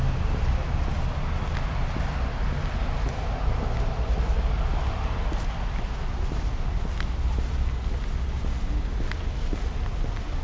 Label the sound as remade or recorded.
recorded